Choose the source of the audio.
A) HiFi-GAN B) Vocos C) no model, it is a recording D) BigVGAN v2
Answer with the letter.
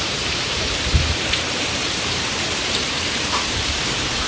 D